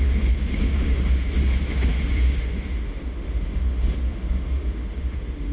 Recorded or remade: remade